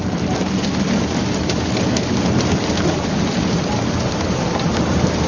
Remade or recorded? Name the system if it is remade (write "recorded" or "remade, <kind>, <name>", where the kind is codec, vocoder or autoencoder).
recorded